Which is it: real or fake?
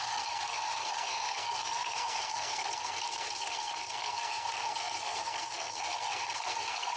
fake